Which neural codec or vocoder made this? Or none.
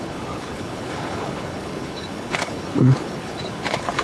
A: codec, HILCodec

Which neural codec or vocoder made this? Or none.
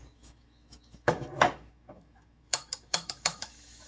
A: autoencoder, DAC-VAE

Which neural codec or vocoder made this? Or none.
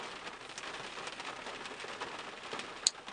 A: none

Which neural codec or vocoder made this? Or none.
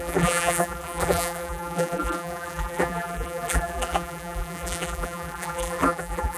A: vocoder, BigVGAN v2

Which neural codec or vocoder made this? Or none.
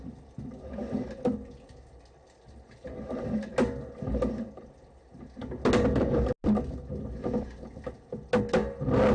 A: none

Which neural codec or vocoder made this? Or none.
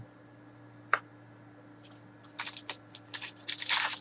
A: none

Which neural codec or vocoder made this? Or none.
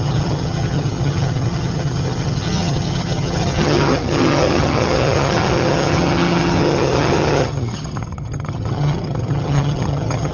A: vocoder, HiFi-GAN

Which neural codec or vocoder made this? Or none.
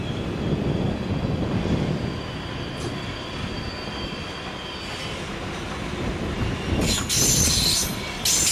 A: none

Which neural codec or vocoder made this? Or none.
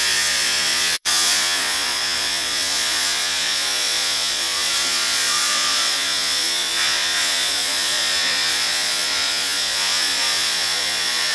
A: vocoder, Vocos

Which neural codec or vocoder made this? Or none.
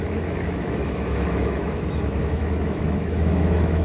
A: autoencoder, DAC-VAE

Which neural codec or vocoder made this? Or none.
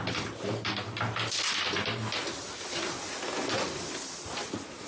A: none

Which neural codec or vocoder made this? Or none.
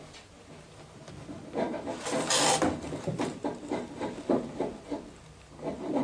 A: none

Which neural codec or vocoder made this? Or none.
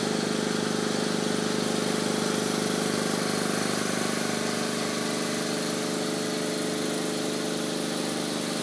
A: none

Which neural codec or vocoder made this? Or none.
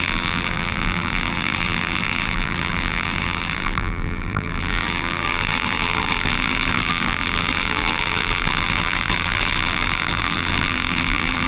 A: vocoder, BigVGAN v2